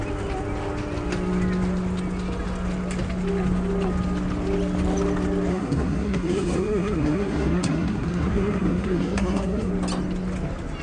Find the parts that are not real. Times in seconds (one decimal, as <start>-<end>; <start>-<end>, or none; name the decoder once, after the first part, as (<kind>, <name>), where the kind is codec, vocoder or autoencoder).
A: 5.5-9.7 (codec, SNAC)